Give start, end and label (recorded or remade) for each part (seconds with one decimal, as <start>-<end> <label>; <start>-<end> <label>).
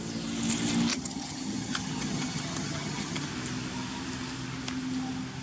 0.0-0.9 recorded; 0.9-3.3 remade; 3.3-5.4 recorded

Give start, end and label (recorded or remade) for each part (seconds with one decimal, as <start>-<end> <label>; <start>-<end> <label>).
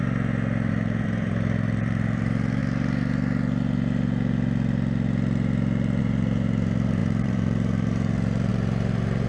0.0-0.7 recorded; 0.7-2.6 remade; 2.6-6.0 recorded; 6.0-9.3 remade